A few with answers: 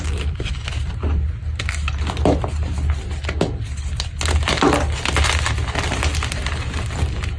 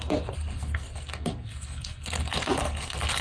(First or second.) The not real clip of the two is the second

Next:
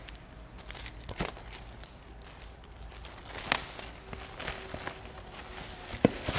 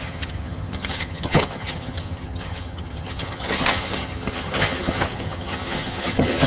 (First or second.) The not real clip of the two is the second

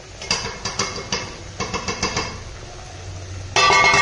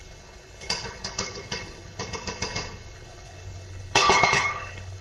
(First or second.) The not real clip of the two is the second